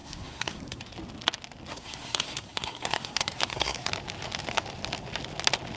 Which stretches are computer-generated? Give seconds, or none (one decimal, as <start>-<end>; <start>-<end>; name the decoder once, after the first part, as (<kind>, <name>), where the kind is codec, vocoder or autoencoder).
0.0-0.8 (codec, SNAC); 1.7-3.9